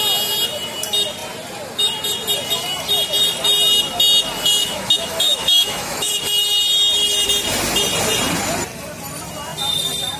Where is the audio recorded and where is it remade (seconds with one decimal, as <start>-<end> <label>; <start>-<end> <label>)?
0.0-4.6 recorded; 4.6-6.1 remade; 6.1-10.2 recorded